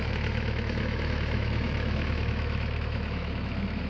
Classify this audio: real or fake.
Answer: fake